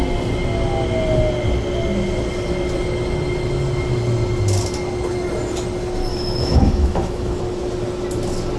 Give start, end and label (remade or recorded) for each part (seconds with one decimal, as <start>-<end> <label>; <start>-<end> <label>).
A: 0.0-6.1 recorded; 6.1-7.4 remade; 7.4-8.6 recorded